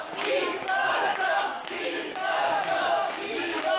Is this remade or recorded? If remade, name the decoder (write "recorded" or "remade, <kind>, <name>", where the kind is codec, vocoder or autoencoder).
remade, codec, DAC